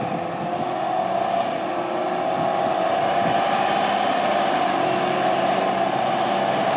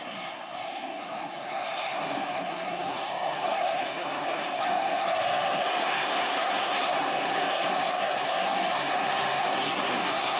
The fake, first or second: second